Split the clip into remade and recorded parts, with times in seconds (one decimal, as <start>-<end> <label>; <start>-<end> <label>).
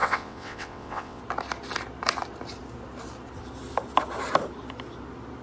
0.0-1.2 remade; 1.2-5.4 recorded